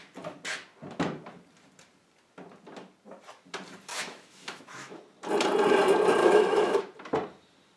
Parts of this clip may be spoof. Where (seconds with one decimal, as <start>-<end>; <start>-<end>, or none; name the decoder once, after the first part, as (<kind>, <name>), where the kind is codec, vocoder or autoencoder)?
3.9-5.0 (autoencoder, DAC-VAE); 6.2-6.8